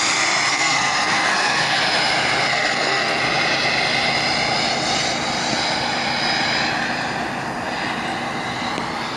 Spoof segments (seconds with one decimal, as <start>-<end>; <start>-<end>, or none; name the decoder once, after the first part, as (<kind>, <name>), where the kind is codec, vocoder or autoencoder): 0.5-1.8 (codec, SNAC); 2.5-3.2